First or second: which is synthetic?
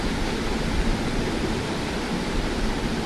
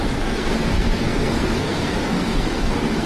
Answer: second